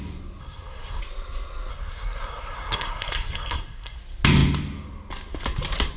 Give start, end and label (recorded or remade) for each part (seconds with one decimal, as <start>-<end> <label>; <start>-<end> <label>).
0.0-0.4 recorded; 0.4-1.0 remade; 1.0-1.7 recorded; 1.7-4.0 remade; 4.0-6.0 recorded